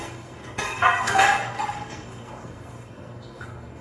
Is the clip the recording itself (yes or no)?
no